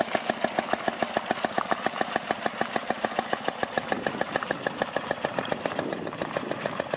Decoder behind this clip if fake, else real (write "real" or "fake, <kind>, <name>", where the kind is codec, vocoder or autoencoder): real